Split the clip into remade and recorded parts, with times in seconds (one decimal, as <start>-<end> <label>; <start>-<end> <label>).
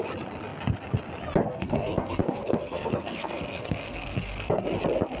0.0-1.5 recorded; 1.5-4.6 remade; 4.6-5.2 recorded